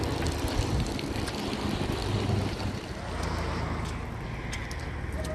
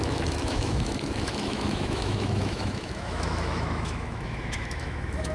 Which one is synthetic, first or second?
second